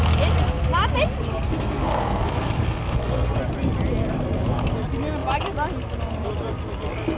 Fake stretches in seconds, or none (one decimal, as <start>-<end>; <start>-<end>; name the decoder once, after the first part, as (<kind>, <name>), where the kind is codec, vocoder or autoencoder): 1.3-3.4 (codec, SNAC)